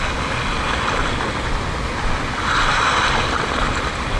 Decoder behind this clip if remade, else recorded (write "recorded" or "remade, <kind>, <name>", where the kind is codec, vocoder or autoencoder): recorded